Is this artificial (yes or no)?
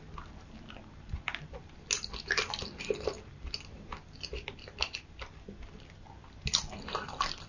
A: no